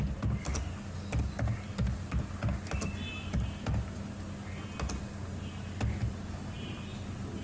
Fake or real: real